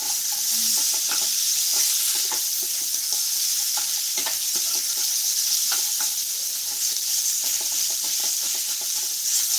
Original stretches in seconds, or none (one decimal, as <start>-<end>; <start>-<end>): 2.5-4.1; 8.2-9.0